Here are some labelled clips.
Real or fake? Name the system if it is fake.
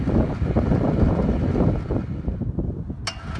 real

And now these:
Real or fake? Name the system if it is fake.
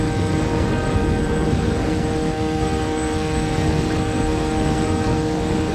fake, codec, SNAC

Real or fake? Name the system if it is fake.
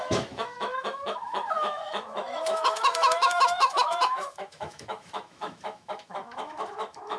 fake, autoencoder, DAC-VAE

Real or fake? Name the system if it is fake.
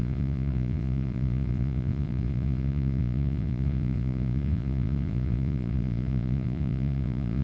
fake, vocoder, Vocos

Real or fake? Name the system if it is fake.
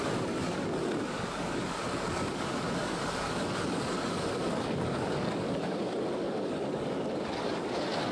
fake, codec, DAC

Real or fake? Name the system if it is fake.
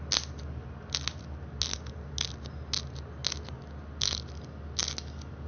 real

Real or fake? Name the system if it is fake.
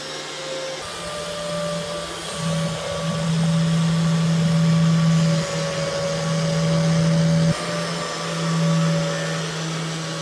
real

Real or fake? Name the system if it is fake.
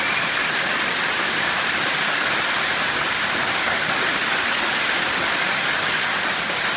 fake, vocoder, BigVGAN v2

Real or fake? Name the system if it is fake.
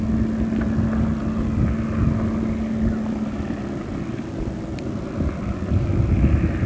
real